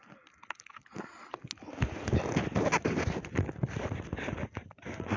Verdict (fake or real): real